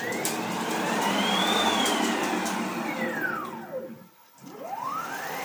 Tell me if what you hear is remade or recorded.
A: recorded